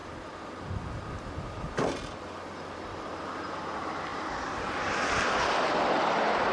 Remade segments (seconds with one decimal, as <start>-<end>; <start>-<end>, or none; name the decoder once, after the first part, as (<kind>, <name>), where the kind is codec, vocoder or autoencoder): none